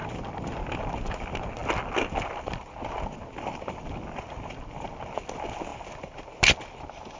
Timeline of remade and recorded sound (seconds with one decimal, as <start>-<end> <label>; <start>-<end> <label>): 0.0-7.2 recorded